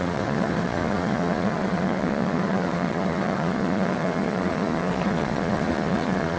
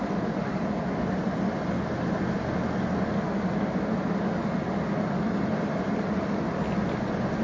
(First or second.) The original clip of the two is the second